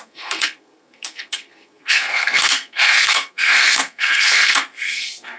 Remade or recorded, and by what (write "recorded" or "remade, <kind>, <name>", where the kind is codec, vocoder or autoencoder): remade, codec, SNAC